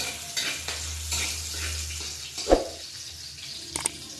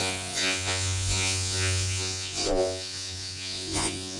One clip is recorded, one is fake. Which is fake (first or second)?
second